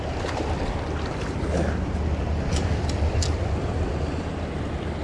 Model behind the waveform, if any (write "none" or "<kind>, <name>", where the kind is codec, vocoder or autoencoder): none